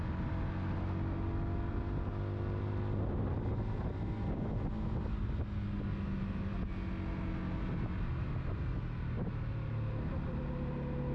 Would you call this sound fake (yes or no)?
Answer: no